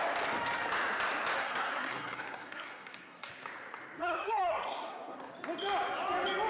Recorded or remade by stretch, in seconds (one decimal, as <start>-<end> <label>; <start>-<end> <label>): 0.0-1.4 recorded; 1.4-3.3 remade; 3.3-4.0 recorded; 4.0-5.3 remade; 5.3-6.5 recorded